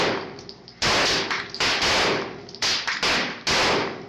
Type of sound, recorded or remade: recorded